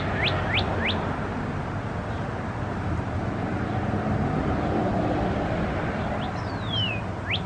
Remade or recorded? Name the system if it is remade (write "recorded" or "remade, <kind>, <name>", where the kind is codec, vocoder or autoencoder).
recorded